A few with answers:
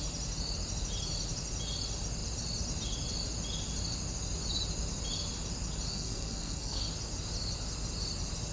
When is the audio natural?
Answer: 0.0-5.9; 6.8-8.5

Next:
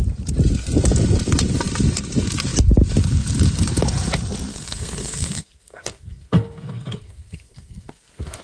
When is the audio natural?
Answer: 0.0-4.5

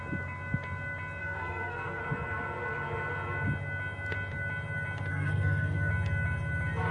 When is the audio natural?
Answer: 0.0-1.2; 2.0-5.1; 5.9-6.9

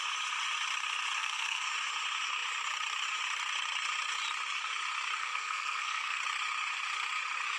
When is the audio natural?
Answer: 0.0-1.2; 1.7-5.2; 6.2-7.6

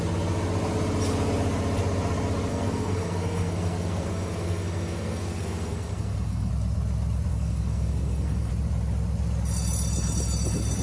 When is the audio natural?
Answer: 0.0-2.5; 6.5-7.3; 8.5-10.8